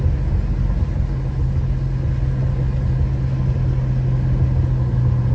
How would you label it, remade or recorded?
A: recorded